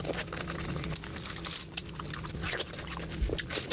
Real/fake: real